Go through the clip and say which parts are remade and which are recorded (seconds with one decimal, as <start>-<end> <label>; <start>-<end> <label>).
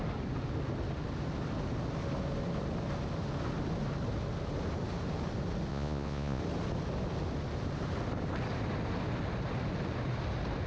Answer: 0.0-5.7 recorded; 5.7-6.4 remade; 6.4-10.7 recorded